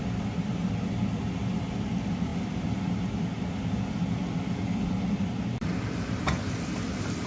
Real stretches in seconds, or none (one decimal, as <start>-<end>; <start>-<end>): none